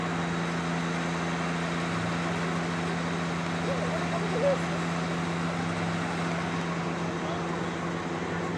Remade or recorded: recorded